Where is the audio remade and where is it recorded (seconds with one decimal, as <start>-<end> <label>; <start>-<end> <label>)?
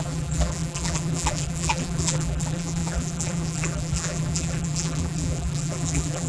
0.0-6.3 remade